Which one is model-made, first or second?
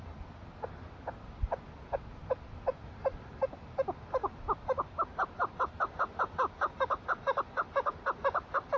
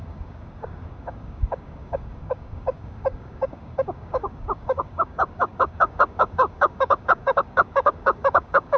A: second